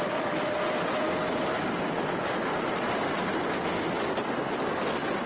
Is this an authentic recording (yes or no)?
yes